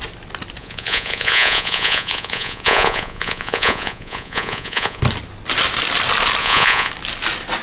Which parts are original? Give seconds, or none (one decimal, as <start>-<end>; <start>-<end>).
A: 0.0-0.6; 5.0-6.4; 6.9-7.6